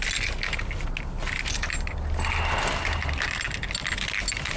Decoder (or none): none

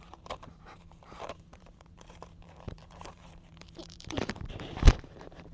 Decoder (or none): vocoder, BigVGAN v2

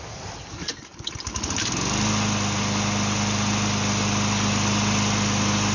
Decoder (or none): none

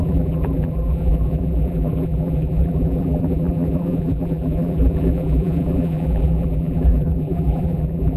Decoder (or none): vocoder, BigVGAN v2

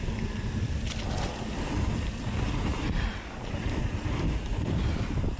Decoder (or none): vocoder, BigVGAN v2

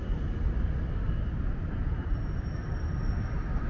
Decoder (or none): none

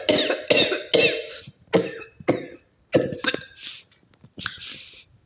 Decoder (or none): none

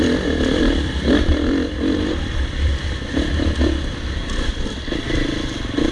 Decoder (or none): vocoder, BigVGAN v2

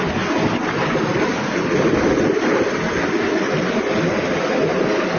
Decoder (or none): none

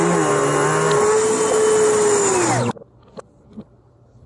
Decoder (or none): none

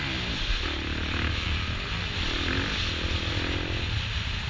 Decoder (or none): none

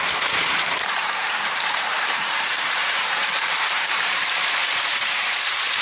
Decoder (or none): vocoder, BigVGAN v2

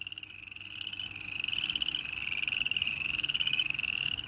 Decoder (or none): none